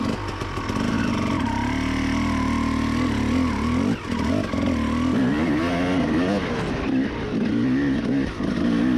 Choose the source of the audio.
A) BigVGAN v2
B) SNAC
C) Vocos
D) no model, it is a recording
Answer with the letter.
D